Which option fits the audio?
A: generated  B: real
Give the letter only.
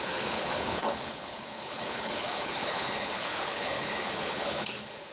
A